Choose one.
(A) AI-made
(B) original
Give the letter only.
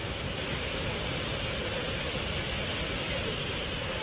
B